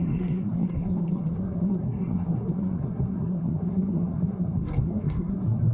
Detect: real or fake fake